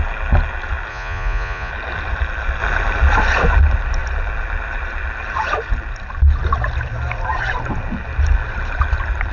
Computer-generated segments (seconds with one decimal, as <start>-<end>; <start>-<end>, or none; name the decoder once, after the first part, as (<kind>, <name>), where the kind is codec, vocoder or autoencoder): 0.9-1.7 (vocoder, Vocos)